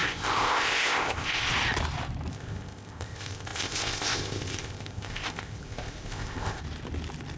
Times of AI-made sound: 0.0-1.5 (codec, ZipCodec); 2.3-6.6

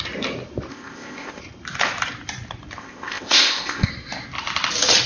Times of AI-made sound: 0.7-1.4 (codec, ZipCodec); 2.8-3.9

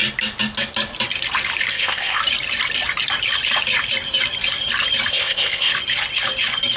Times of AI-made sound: 1.7-2.2 (codec, ZipCodec); 5.1-5.7

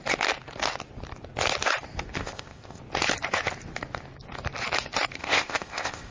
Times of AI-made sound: 2.2-2.8 (codec, ZipCodec); 5.2-6.1

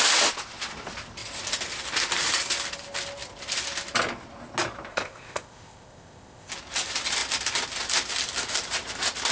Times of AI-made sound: 4.9-6.5 (codec, ZipCodec)

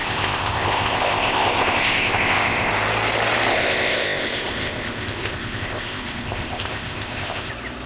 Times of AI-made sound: 0.0-2.7 (codec, ZipCodec); 3.5-7.5

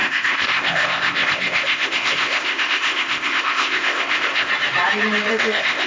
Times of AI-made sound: 0.0-4.5 (codec, ZipCodec); 5.3-5.9